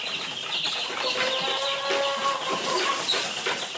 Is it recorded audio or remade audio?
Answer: recorded